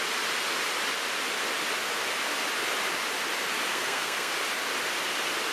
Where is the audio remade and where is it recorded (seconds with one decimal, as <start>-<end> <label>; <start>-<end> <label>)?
0.0-3.7 recorded; 3.7-4.3 remade; 4.3-5.5 recorded